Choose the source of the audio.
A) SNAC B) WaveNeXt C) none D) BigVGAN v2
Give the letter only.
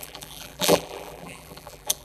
D